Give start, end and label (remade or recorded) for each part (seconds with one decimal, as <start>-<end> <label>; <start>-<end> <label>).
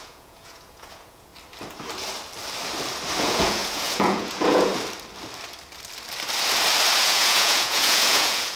0.0-1.3 remade; 1.3-3.2 recorded; 3.2-4.7 remade; 4.7-7.0 recorded; 7.0-8.6 remade